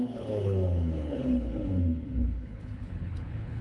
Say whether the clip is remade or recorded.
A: remade